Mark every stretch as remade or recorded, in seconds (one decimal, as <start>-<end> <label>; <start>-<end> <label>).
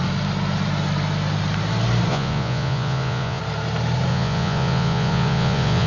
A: 0.0-2.1 recorded; 2.1-3.4 remade; 3.4-4.1 recorded; 4.1-5.9 remade